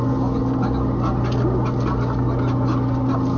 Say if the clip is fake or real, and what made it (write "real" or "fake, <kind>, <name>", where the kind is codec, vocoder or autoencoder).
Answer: real